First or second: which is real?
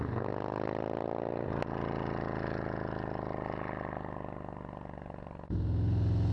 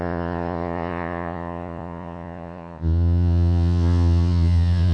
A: first